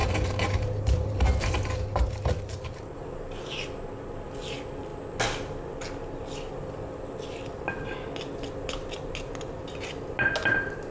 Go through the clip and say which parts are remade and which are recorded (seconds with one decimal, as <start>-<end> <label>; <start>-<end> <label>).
0.0-1.5 remade; 1.5-10.9 recorded